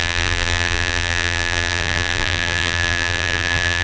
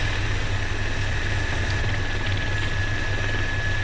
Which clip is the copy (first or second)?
first